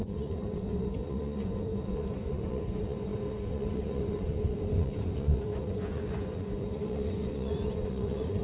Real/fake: fake